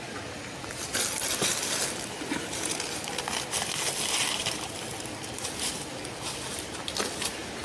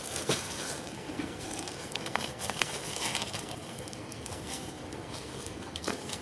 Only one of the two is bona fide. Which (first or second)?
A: first